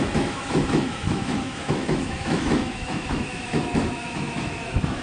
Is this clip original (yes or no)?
no